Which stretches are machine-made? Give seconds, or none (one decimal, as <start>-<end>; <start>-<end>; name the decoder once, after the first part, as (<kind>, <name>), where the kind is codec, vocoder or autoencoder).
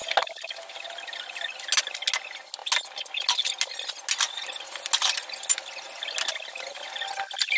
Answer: none